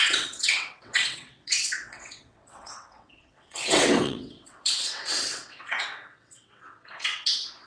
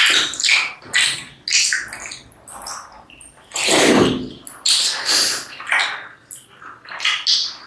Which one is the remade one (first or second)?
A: first